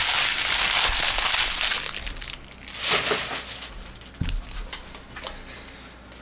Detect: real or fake real